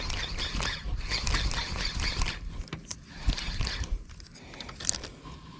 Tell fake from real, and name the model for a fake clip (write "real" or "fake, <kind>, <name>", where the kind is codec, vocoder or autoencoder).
real